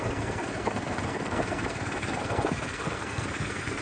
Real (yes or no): no